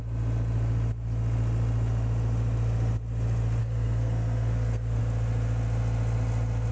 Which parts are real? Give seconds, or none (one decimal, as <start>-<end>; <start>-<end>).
0.0-3.6; 5.0-6.7